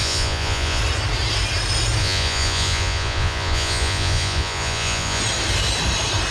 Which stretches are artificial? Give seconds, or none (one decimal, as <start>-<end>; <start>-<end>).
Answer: 0.0-0.8; 2.0-5.2